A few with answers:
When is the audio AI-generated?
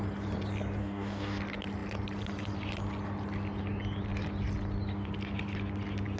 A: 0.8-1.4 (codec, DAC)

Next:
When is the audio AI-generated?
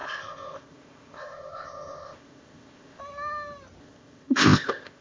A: 0.0-3.0 (codec, ZipCodec); 3.8-5.0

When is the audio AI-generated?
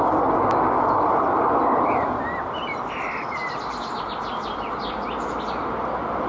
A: 1.1-4.9 (vocoder, BigVGAN v2)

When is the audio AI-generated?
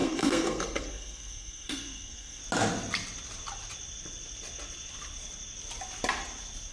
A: 0.0-2.4 (codec, SNAC)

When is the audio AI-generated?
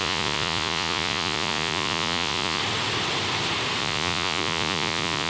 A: 0.0-2.6 (vocoder, Vocos); 3.8-5.3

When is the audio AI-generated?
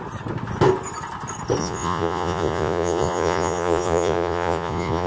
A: 1.6-5.1 (vocoder, Vocos)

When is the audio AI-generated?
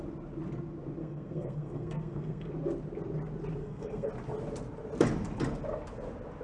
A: 1.0-2.5 (codec, SNAC); 3.6-4.1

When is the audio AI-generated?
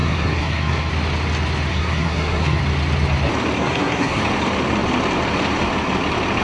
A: 0.0-0.9 (codec, SNAC); 1.7-2.6; 3.6-4.2